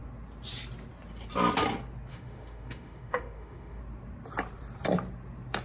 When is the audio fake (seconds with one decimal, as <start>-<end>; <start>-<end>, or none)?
2.1-3.8